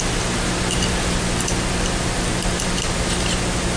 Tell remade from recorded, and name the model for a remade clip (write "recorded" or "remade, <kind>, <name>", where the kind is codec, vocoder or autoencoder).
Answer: recorded